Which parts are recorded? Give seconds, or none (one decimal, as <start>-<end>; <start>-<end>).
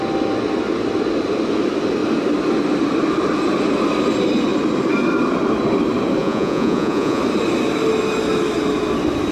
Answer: 0.0-6.2; 7.2-9.3